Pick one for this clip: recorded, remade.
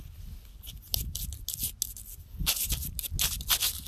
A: recorded